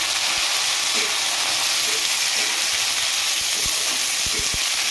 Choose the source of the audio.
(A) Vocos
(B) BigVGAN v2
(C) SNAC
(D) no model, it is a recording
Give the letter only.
D